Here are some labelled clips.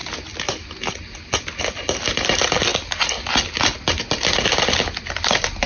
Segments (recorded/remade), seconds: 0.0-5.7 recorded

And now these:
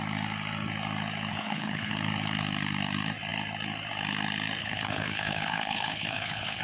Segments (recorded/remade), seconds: 0.0-1.3 recorded; 1.3-1.9 remade; 1.9-4.6 recorded; 4.6-6.6 remade

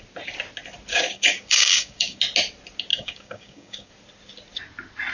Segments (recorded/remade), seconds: 0.0-0.9 recorded; 0.9-2.2 remade; 2.2-2.9 recorded; 2.9-3.9 remade; 3.9-5.1 recorded

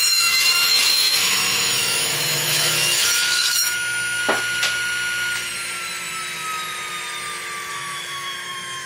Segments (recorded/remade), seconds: 0.0-4.2 remade; 4.2-7.7 recorded; 7.7-8.9 remade

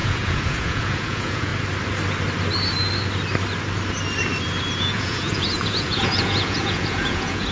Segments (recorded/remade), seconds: 0.0-1.5 remade; 1.5-4.8 recorded; 4.8-7.5 remade

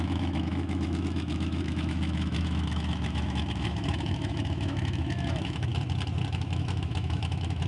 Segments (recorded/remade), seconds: 0.0-5.7 remade; 5.7-6.3 recorded; 6.3-7.7 remade